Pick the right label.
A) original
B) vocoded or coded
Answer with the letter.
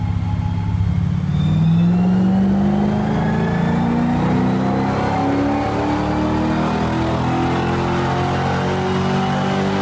A